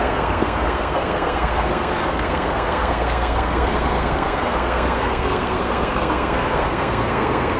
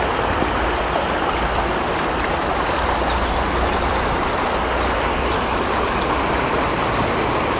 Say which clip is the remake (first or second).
first